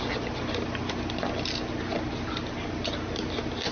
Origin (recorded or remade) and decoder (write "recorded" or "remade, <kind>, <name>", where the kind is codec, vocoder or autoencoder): recorded